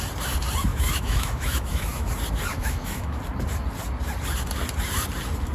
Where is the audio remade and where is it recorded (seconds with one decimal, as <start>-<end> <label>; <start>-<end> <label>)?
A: 0.0-0.7 recorded; 0.7-2.1 remade; 2.1-2.5 recorded; 2.5-3.2 remade; 3.2-5.5 recorded